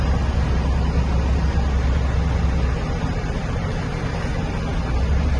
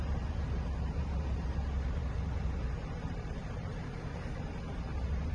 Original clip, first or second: first